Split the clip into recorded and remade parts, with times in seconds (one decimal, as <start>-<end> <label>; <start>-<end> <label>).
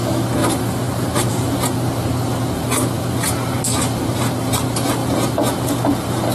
0.0-0.4 recorded; 0.4-1.3 remade; 1.3-6.3 recorded